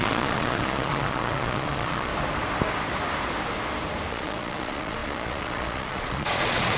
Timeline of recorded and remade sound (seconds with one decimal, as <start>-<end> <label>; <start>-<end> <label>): 0.0-2.1 remade; 2.1-4.1 recorded; 4.1-6.8 remade